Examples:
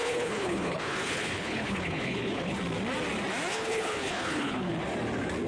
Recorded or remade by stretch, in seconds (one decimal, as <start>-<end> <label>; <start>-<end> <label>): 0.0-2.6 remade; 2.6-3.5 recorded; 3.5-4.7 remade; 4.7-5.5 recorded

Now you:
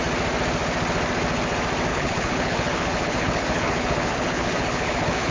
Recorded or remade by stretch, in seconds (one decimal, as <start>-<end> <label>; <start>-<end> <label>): 0.0-1.9 recorded; 1.9-5.3 remade

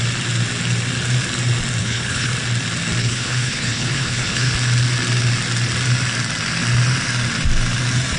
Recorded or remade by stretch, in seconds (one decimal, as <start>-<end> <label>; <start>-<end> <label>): 0.0-1.8 recorded; 1.8-2.3 remade; 2.3-3.0 recorded; 3.0-4.5 remade; 4.5-8.2 recorded